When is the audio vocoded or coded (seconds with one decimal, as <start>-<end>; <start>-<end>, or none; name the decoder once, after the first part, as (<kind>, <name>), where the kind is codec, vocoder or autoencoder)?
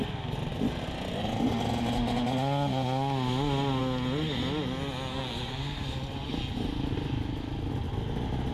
5.1-5.8 (codec, SNAC)